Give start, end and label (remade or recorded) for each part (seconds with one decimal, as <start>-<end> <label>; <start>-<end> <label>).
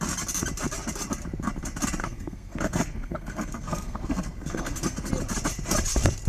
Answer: 0.0-2.0 recorded; 2.0-5.1 remade; 5.1-6.3 recorded